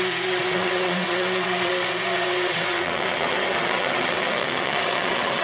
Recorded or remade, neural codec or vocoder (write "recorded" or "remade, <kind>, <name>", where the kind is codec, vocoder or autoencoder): remade, vocoder, WaveNeXt